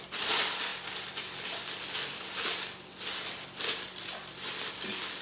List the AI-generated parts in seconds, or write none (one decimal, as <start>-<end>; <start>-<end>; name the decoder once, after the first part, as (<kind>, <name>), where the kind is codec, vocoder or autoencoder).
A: none